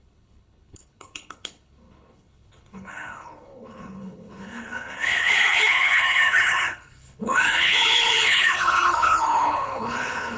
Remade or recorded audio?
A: remade